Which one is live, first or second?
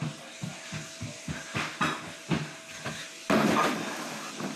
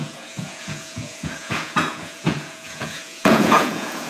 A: first